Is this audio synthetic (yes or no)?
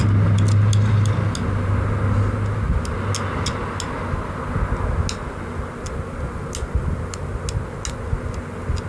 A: no